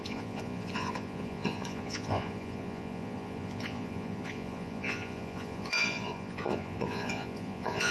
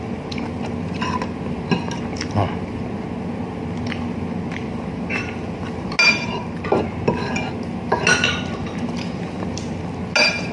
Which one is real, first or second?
second